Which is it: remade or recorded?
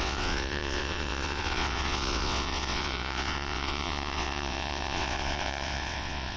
remade